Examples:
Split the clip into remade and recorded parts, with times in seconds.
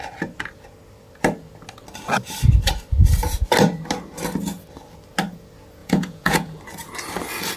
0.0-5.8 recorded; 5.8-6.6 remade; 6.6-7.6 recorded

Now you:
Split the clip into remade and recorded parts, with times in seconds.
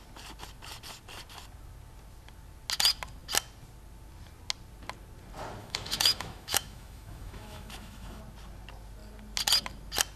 0.0-5.6 recorded; 5.6-8.2 remade; 8.2-10.2 recorded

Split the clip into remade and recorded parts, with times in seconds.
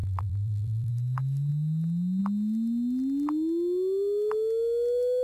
0.0-0.9 remade; 0.9-5.2 recorded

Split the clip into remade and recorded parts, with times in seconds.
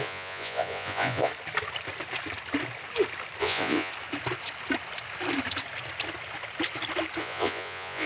0.0-1.3 remade; 1.3-3.4 recorded; 3.4-3.9 remade; 3.9-7.2 recorded; 7.2-8.1 remade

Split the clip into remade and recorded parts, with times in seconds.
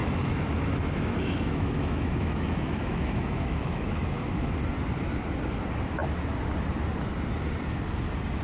0.0-4.5 remade; 4.5-8.4 recorded